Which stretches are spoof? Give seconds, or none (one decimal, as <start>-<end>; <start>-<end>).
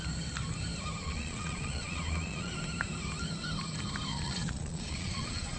1.0-2.5; 4.1-5.6